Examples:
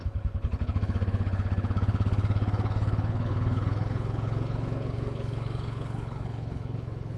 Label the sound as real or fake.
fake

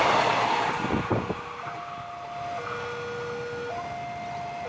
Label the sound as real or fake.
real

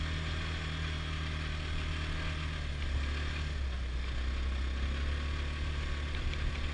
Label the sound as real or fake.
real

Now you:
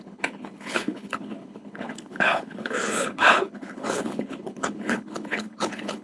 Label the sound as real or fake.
fake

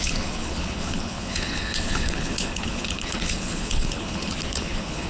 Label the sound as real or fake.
fake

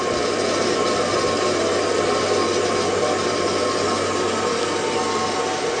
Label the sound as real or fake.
real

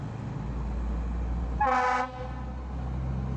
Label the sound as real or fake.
real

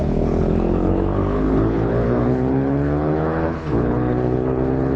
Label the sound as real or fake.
fake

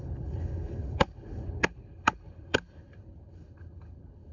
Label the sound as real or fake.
fake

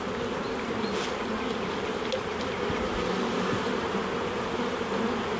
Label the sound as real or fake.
real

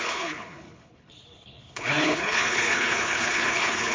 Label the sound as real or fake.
fake